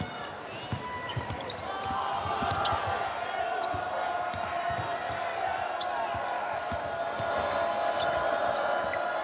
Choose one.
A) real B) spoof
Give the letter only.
A